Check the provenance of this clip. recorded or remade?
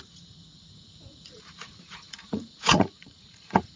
remade